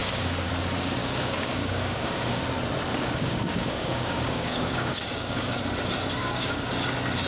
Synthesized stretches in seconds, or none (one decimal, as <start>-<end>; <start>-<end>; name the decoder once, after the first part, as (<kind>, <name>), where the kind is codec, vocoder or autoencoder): 0.0-0.5 (codec, DAC); 1.0-2.4; 2.9-5.6; 6.2-6.7